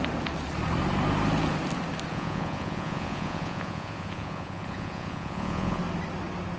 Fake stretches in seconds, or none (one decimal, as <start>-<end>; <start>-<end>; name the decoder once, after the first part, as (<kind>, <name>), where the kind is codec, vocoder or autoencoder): 2.1-5.8 (vocoder, Vocos)